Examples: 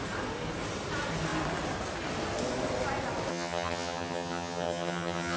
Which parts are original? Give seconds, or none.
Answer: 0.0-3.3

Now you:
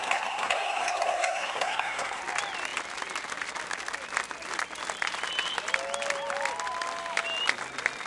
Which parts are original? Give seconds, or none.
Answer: 2.2-8.1

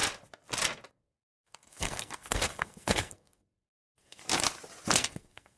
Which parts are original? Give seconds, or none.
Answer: 0.0-0.9; 4.2-4.9

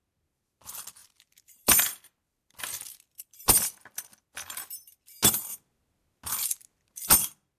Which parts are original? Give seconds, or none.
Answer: 0.0-1.0; 4.9-7.6

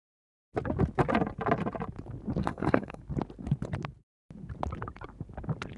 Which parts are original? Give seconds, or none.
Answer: 0.0-2.4; 3.0-5.8

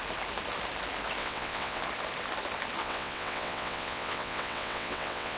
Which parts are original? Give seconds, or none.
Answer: 0.0-1.2; 1.8-2.8